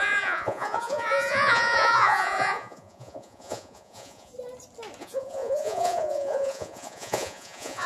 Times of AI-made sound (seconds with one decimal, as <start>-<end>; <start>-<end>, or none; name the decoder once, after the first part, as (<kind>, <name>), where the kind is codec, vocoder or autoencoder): 0.0-4.3 (vocoder, Vocos); 5.0-7.9